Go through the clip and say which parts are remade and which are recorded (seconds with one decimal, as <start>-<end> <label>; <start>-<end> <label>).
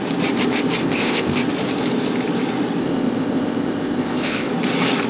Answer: 0.0-0.8 recorded; 0.8-1.4 remade; 1.4-2.8 recorded; 2.8-4.5 remade; 4.5-5.1 recorded